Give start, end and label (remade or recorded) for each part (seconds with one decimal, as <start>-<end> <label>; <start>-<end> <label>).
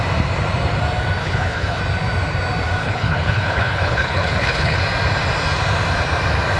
0.0-1.2 recorded; 1.2-1.8 remade; 1.8-2.8 recorded; 2.8-4.8 remade; 4.8-6.6 recorded